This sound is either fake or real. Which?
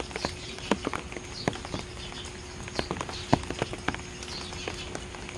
real